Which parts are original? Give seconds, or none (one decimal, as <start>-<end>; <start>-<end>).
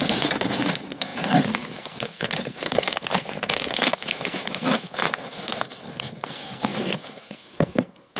none